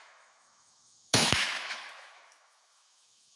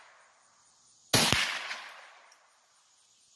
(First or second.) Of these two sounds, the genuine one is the second